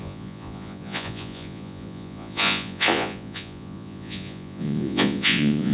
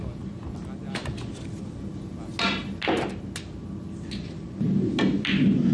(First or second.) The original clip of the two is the second